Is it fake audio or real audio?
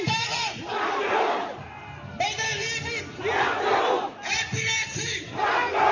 real